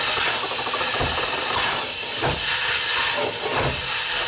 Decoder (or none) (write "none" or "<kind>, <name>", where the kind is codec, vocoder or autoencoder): none